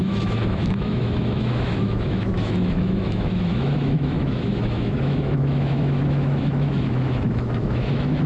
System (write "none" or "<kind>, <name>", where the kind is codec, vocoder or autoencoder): autoencoder, DAC-VAE